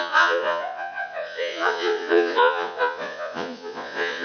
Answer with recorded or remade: remade